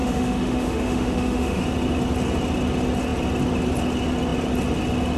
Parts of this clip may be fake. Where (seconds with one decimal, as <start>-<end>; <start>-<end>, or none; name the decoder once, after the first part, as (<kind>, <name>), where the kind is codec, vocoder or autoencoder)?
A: 0.0-1.6 (autoencoder, DAC-VAE)